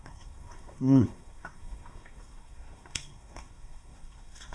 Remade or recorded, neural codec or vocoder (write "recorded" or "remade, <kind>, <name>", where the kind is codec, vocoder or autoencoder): remade, codec, SNAC